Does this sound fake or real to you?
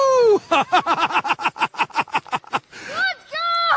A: real